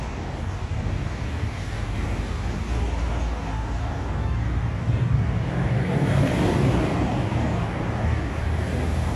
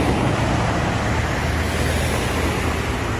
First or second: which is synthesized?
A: first